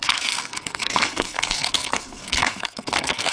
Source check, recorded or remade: remade